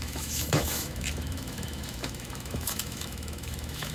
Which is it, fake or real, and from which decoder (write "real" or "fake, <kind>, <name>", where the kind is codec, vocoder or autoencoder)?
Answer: fake, autoencoder, DAC-VAE